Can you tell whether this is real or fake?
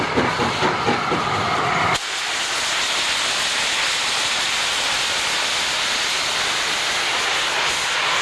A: real